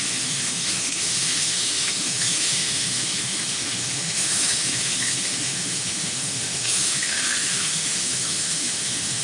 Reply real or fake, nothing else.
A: fake